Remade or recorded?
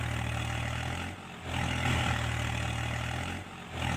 recorded